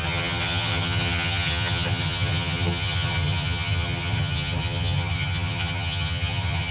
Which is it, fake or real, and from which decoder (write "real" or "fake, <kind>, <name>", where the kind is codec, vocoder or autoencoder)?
fake, vocoder, HiFi-GAN